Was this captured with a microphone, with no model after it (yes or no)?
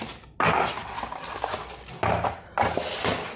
yes